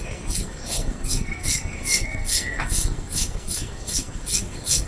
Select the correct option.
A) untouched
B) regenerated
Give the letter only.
B